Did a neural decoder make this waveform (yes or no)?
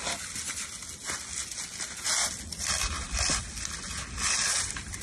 no